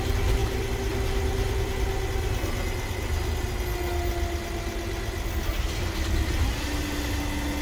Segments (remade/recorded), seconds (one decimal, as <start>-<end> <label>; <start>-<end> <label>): 0.0-7.6 recorded